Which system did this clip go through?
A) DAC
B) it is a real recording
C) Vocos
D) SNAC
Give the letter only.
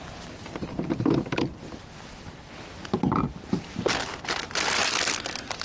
B